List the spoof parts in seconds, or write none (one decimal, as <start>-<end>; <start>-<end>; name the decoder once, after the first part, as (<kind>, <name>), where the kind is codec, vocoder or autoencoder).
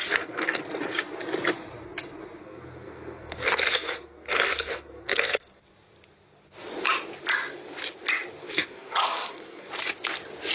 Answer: 0.0-0.6 (codec, SNAC); 2.4-5.6; 8.4-9.7